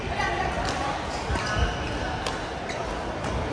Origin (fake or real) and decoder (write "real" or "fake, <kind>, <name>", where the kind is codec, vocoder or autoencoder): real